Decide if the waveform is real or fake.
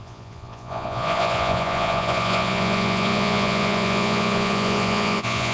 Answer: fake